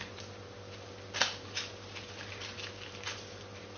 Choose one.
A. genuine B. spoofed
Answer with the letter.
A